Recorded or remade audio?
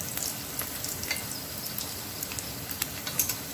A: recorded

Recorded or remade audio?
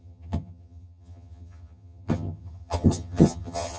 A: remade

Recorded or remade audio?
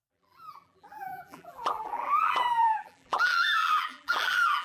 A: remade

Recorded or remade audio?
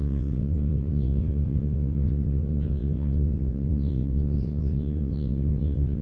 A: remade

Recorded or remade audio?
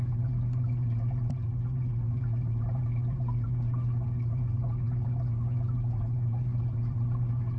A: remade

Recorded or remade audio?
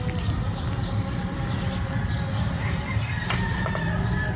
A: recorded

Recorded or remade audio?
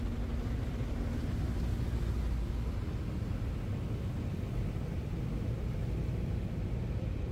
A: recorded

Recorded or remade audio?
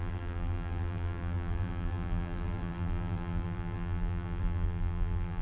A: remade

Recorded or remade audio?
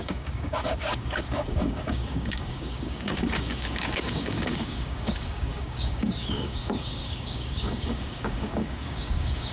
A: remade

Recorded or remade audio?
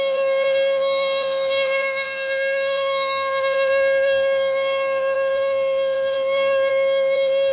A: remade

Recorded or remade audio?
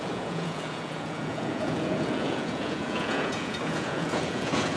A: remade